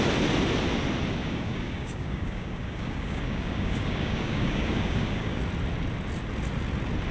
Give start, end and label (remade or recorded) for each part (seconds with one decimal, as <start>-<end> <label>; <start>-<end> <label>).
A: 0.0-1.2 recorded; 1.2-5.4 remade; 5.4-7.1 recorded

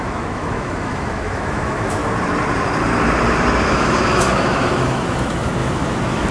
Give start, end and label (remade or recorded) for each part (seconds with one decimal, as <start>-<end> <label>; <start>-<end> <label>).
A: 0.0-2.0 remade; 2.0-3.6 recorded; 3.6-6.3 remade

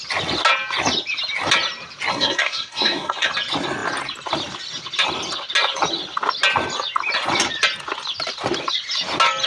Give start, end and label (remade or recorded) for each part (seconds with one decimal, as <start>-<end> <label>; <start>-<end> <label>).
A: 0.0-2.1 recorded; 2.1-3.3 remade; 3.3-9.5 recorded

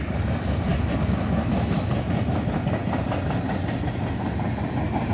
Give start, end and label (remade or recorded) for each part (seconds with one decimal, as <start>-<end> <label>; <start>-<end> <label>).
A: 0.0-5.1 recorded

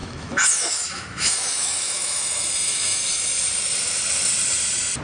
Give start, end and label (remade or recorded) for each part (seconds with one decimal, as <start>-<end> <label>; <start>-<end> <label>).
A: 0.0-3.0 remade; 3.0-5.0 recorded

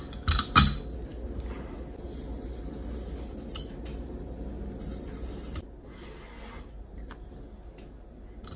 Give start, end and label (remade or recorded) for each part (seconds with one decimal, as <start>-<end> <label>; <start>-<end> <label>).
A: 0.0-8.6 recorded